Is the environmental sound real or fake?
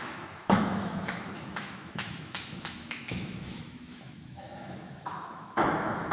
fake